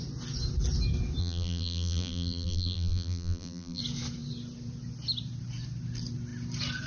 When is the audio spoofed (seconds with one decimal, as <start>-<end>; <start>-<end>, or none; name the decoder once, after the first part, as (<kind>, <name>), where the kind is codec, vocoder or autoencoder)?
1.2-3.8 (vocoder, BigVGAN v2)